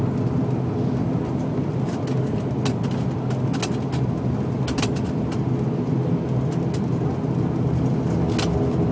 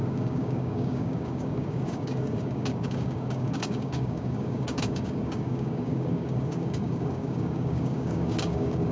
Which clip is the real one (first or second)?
first